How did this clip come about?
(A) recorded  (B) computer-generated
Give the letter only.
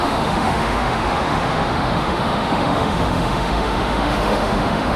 B